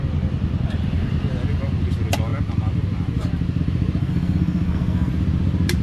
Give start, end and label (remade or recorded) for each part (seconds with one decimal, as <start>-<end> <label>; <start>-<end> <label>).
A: 0.0-4.0 recorded; 4.0-5.1 remade; 5.1-5.8 recorded

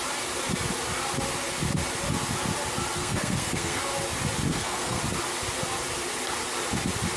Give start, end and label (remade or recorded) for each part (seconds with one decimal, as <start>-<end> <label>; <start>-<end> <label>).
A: 0.0-3.0 recorded; 3.0-3.8 remade; 3.8-4.5 recorded; 4.5-5.0 remade; 5.0-7.2 recorded

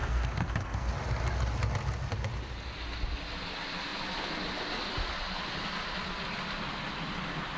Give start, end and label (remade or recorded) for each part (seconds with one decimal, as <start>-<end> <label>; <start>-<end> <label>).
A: 0.0-0.9 remade; 0.9-7.6 recorded

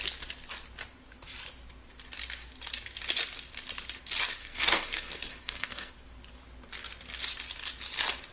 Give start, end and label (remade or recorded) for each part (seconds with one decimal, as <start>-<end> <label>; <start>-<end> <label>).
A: 0.0-4.4 recorded; 4.4-5.9 remade; 5.9-8.3 recorded

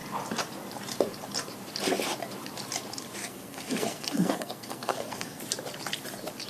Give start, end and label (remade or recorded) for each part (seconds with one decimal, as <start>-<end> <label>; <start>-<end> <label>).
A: 0.0-3.2 recorded; 3.2-5.4 remade; 5.4-6.5 recorded